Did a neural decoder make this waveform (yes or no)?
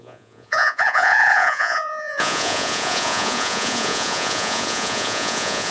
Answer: yes